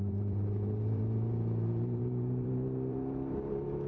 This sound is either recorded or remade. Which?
remade